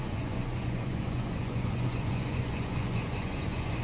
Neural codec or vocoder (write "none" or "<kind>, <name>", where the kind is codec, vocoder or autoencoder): vocoder, Vocos